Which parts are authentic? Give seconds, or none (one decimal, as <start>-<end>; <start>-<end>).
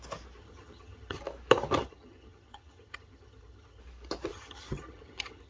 0.0-0.4; 1.2-1.8; 3.8-4.3